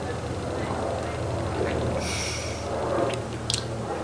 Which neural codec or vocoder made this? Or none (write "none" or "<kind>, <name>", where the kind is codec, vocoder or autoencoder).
none